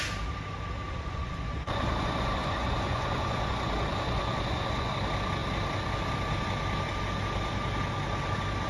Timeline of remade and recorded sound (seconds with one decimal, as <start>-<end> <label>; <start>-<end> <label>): 0.0-0.9 recorded; 0.9-4.9 remade; 4.9-8.7 recorded